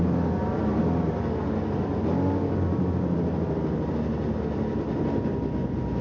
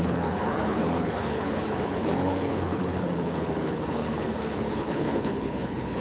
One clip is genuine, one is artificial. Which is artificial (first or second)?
second